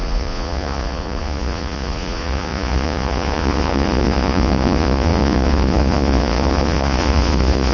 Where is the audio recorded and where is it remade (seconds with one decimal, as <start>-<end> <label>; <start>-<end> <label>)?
0.0-7.7 remade